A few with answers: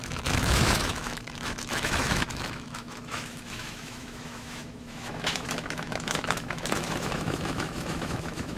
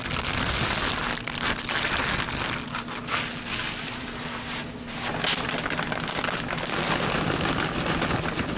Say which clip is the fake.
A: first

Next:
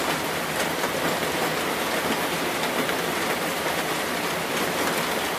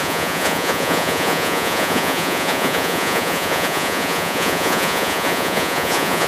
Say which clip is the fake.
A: second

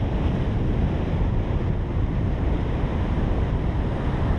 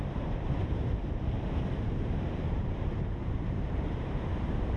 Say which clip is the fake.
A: second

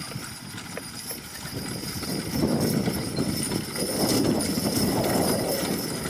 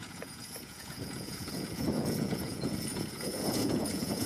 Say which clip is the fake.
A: second